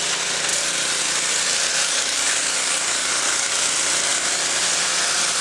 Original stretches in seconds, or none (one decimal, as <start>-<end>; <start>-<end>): 0.0-1.7; 3.5-5.4